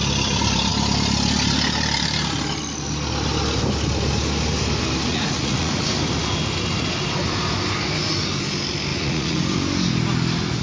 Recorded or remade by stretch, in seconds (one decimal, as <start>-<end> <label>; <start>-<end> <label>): 0.0-5.1 recorded; 5.1-5.9 remade; 5.9-8.9 recorded; 8.9-9.4 remade; 9.4-10.6 recorded